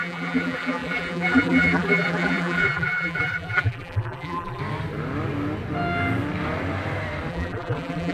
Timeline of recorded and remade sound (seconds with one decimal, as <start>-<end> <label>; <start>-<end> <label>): 0.0-4.6 remade; 4.6-7.3 recorded; 7.3-8.1 remade